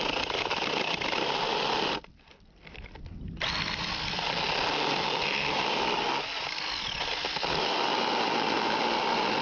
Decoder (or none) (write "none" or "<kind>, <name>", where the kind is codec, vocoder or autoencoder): none